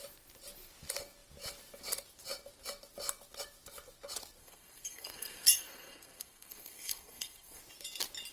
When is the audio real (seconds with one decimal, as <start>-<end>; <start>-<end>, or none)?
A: 0.0-4.4; 7.6-8.3